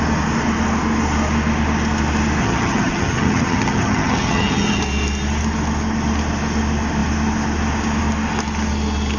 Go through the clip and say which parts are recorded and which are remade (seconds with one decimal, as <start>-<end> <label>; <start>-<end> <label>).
0.0-2.4 recorded; 2.4-4.8 remade; 4.8-9.2 recorded